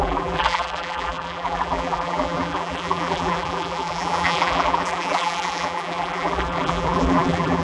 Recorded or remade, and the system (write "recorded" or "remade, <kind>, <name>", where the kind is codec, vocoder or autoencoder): remade, vocoder, BigVGAN v2